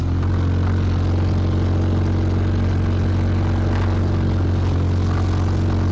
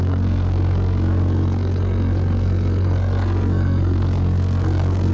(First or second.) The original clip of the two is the first